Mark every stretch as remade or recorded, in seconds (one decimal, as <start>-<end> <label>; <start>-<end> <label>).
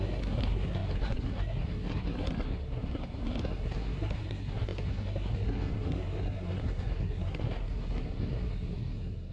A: 0.0-9.3 remade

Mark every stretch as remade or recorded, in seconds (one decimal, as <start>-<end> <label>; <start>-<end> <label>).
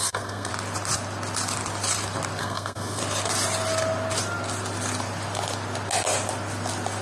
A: 0.0-0.5 remade; 0.5-2.4 recorded; 2.4-3.0 remade; 3.0-7.0 recorded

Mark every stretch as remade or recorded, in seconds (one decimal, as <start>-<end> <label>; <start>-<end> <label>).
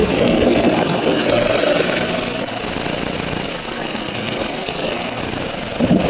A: 0.0-2.6 remade; 2.6-3.5 recorded; 3.5-5.2 remade; 5.2-6.1 recorded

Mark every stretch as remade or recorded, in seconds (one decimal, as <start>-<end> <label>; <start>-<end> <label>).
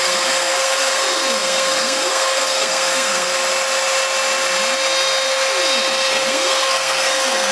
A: 0.0-3.3 remade; 3.3-6.1 recorded; 6.1-7.5 remade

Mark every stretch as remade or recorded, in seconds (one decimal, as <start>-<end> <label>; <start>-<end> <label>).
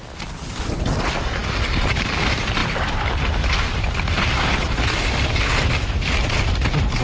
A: 0.0-7.0 recorded